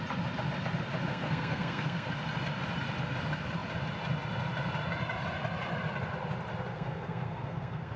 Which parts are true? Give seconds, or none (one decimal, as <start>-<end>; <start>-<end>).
0.0-1.1; 2.1-6.7